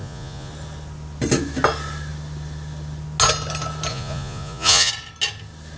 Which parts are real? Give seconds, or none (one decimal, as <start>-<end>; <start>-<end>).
0.5-3.9; 4.9-5.8